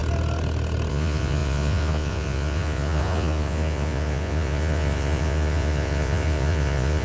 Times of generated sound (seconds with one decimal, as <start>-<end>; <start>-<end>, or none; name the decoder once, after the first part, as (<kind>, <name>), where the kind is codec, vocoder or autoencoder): 0.9-7.0 (vocoder, Vocos)